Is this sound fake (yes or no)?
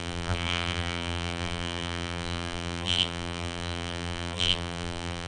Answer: yes